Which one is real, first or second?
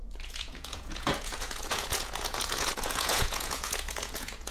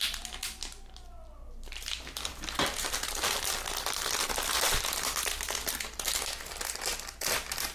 second